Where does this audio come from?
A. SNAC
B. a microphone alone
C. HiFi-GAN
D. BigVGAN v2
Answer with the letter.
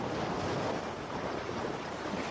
B